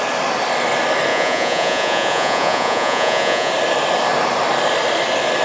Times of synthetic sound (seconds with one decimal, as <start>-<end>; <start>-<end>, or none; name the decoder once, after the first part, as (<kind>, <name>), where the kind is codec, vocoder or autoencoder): 1.1-3.5 (vocoder, Vocos)